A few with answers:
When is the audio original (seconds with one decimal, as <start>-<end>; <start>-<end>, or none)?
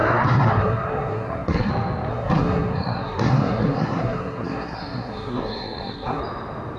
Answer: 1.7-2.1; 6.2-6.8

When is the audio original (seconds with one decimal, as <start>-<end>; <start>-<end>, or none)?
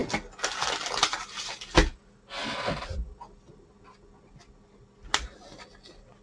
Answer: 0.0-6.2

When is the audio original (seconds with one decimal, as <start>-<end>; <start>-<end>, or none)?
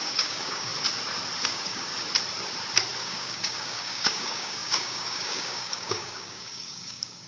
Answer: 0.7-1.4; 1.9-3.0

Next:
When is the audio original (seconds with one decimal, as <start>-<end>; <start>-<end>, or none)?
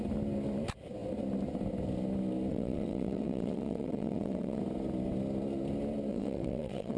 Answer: 0.0-2.5; 4.6-6.1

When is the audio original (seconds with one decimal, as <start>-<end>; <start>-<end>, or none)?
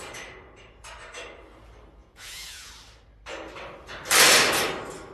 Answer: 0.0-2.0; 2.7-5.1